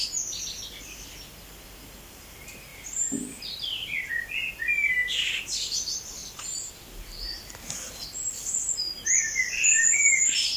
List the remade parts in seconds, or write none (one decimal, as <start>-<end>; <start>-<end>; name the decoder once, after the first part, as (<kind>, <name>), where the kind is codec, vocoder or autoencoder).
2.7-4.1 (vocoder, BigVGAN v2); 6.2-7.4